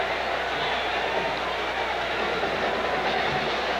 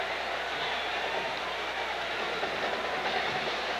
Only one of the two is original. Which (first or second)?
first